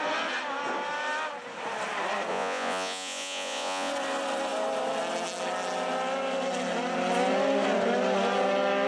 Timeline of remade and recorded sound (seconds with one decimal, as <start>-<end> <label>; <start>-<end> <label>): 0.0-2.3 recorded; 2.3-3.9 remade; 3.9-8.9 recorded